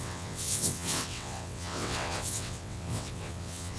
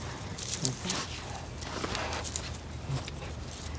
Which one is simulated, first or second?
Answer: first